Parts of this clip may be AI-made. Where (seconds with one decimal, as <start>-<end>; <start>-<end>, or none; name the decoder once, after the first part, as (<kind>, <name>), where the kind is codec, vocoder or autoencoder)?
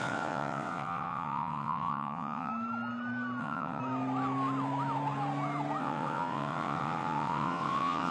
0.0-2.5 (vocoder, WaveNeXt); 3.4-3.8; 5.8-8.1